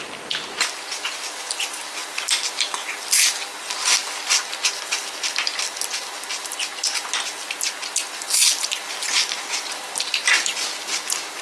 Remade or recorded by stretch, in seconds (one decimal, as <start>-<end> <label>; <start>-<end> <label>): 0.0-11.4 recorded